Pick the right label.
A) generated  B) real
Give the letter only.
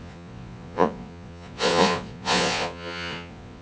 A